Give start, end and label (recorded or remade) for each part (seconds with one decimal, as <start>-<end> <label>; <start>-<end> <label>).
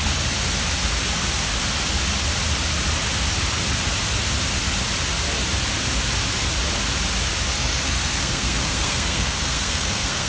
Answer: 0.0-7.5 recorded; 7.5-10.3 remade